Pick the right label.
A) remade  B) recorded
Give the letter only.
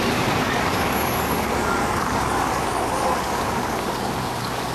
A